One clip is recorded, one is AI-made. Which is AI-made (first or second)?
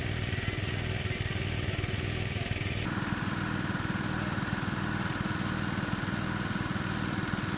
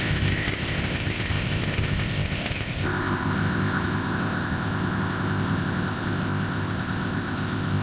second